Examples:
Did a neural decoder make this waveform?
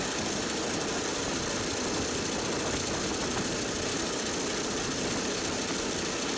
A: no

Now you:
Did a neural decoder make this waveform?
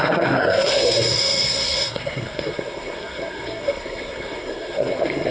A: yes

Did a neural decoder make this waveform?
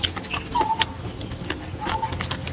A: no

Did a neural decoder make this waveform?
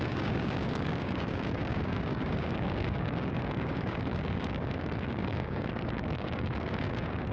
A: yes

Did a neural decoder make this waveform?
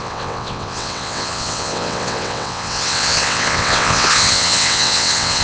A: yes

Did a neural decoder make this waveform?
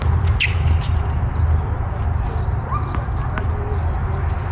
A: no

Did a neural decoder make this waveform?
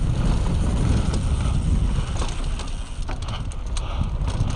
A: no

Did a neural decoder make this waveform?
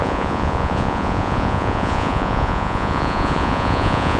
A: yes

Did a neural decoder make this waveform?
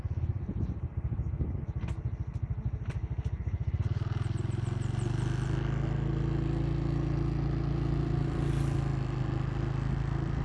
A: no